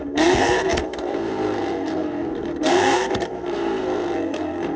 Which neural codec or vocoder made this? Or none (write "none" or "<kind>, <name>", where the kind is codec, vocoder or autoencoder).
codec, SNAC